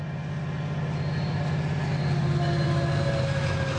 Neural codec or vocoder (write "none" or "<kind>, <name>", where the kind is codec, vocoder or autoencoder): none